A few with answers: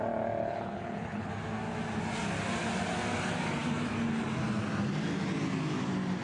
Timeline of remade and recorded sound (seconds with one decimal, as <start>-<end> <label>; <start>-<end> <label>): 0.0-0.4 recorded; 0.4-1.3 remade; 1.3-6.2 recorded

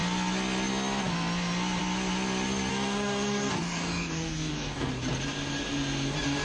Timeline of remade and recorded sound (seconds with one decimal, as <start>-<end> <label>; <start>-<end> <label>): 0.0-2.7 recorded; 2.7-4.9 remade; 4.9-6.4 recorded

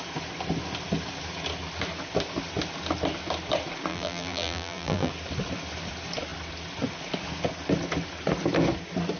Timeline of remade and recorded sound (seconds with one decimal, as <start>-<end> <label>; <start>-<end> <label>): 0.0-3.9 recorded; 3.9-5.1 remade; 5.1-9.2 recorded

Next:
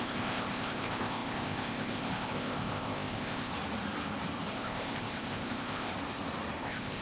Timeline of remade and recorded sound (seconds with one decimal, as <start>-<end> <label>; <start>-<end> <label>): 0.0-3.5 remade; 3.5-4.5 recorded; 4.5-5.9 remade; 5.9-6.6 recorded; 6.6-7.0 remade